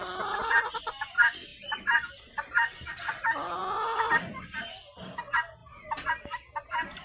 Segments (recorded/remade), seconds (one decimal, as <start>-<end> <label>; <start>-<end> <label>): 0.0-7.0 recorded